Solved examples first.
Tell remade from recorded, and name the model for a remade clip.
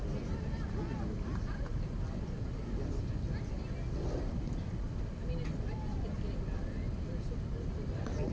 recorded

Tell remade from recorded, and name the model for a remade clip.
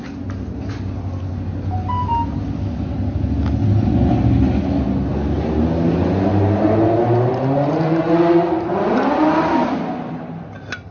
recorded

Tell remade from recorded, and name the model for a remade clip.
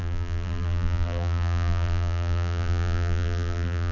remade, vocoder, BigVGAN v2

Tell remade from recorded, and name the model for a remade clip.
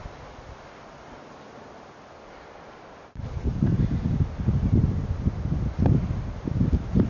recorded